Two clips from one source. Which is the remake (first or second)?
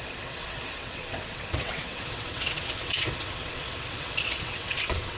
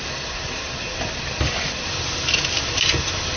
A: first